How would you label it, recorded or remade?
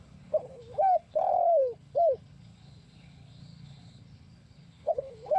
remade